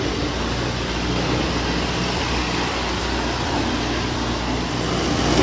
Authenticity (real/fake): real